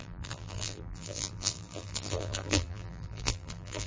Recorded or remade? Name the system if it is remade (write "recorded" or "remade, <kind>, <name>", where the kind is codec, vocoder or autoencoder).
remade, vocoder, BigVGAN v2